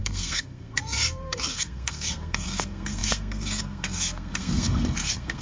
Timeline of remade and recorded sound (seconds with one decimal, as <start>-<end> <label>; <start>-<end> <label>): 0.0-5.4 remade